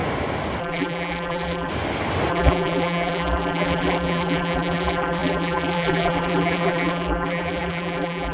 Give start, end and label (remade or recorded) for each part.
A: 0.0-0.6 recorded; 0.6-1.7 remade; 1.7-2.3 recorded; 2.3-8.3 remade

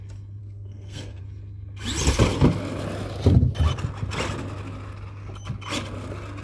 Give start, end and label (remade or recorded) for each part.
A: 0.0-0.4 recorded; 0.4-1.2 remade; 1.2-6.4 recorded

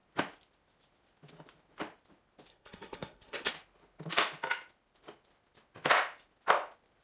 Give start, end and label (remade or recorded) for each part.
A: 0.0-2.5 recorded; 2.5-3.5 remade; 3.5-7.0 recorded

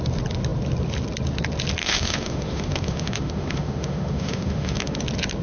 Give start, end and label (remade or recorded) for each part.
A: 0.0-1.8 recorded; 1.8-5.0 remade; 5.0-5.4 recorded

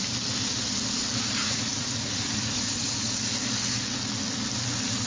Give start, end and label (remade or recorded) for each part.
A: 0.0-1.4 recorded; 1.4-3.1 remade; 3.1-5.1 recorded

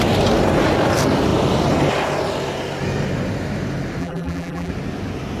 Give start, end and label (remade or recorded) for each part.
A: 0.0-4.0 recorded; 4.0-4.7 remade; 4.7-5.4 recorded